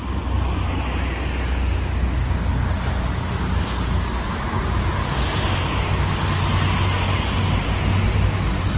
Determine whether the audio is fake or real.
real